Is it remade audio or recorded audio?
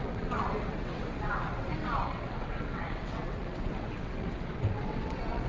remade